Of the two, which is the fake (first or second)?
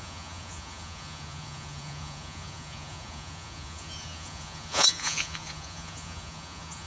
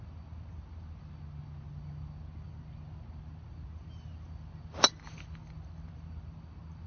first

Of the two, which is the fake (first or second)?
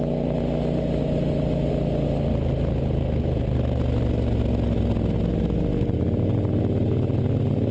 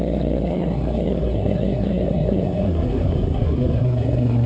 second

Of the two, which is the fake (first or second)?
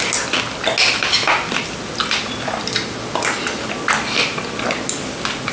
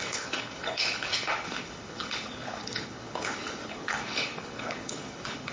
second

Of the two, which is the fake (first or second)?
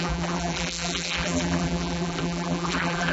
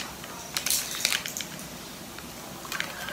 first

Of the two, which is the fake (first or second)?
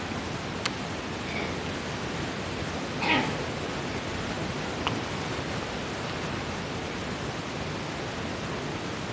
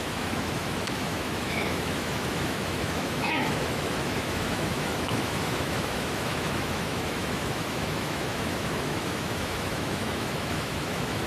second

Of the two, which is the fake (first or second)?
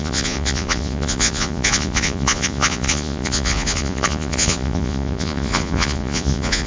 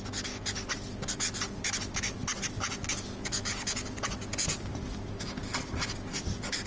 first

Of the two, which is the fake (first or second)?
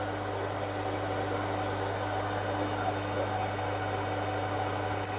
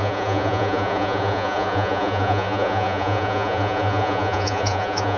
second